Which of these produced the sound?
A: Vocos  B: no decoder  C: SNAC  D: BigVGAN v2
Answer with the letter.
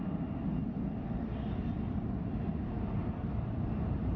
B